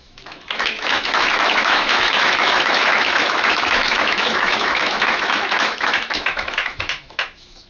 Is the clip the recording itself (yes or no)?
no